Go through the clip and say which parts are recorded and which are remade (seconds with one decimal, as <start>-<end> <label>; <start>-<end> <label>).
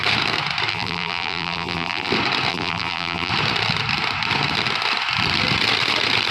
0.0-0.7 recorded; 0.7-2.1 remade; 2.1-2.5 recorded; 2.5-3.3 remade; 3.3-6.3 recorded